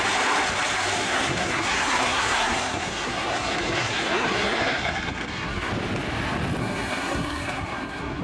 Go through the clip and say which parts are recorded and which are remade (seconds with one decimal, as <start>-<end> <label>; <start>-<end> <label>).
0.0-1.0 recorded; 1.0-5.7 remade; 5.7-6.6 recorded; 6.6-8.2 remade

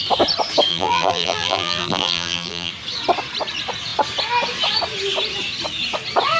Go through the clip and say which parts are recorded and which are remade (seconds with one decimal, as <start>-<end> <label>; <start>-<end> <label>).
0.0-0.7 recorded; 0.7-2.7 remade; 2.7-6.4 recorded

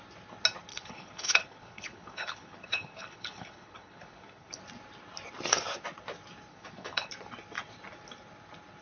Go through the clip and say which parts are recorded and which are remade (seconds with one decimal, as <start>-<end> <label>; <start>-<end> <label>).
0.0-0.7 recorded; 0.7-4.6 remade; 4.6-6.5 recorded; 6.5-7.1 remade; 7.1-8.8 recorded

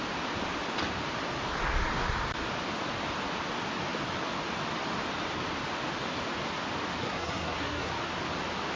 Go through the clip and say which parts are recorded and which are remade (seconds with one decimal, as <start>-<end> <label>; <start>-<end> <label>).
0.0-7.0 recorded; 7.0-7.9 remade; 7.9-8.8 recorded

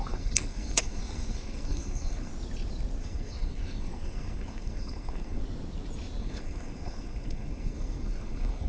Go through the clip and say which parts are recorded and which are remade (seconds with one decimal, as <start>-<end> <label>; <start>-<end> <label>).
0.0-2.3 remade; 2.3-3.0 recorded; 3.0-5.4 remade; 5.4-6.2 recorded; 6.2-8.7 remade

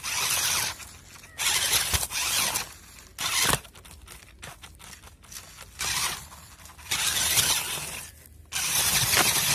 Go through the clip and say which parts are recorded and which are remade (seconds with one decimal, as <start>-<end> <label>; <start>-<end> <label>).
0.0-9.5 recorded

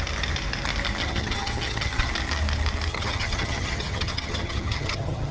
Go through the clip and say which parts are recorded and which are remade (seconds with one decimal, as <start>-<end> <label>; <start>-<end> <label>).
0.0-1.0 recorded; 1.0-2.1 remade; 2.1-2.9 recorded; 2.9-5.3 remade

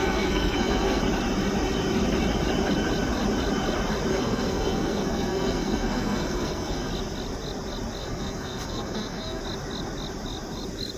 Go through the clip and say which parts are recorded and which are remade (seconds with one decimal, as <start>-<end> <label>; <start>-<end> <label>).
0.0-1.0 remade; 1.0-4.1 recorded; 4.1-6.9 remade; 6.9-8.0 recorded; 8.0-9.4 remade; 9.4-11.0 recorded